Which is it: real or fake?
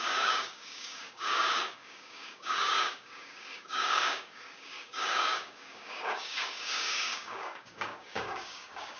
fake